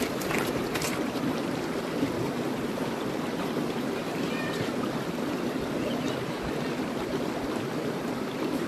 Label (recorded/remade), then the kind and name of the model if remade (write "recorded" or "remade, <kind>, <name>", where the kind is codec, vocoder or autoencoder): remade, vocoder, BigVGAN v2